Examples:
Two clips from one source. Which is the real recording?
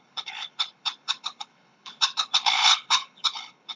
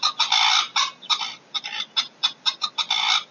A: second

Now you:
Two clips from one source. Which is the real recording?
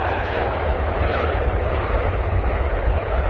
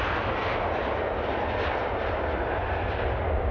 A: second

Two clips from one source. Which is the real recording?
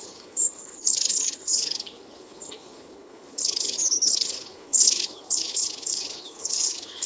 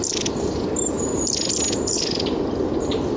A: second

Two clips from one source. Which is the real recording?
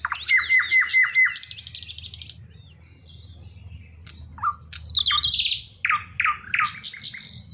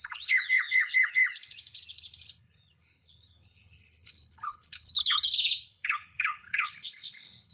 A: first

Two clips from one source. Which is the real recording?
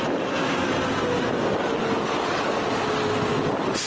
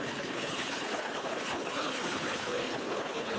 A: first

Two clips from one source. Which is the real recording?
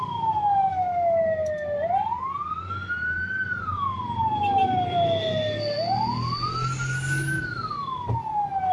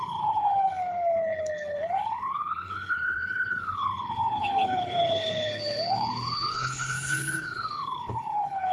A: first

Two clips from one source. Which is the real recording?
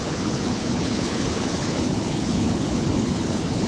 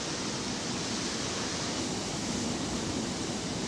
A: second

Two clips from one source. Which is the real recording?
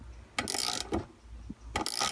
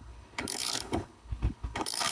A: first